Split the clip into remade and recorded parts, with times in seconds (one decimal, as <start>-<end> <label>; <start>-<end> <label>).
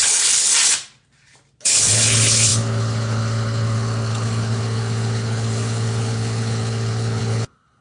0.0-0.5 remade; 0.5-1.6 recorded; 1.6-7.8 remade